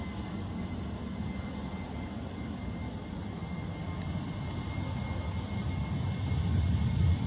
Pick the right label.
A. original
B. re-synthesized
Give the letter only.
A